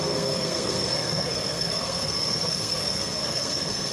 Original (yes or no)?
no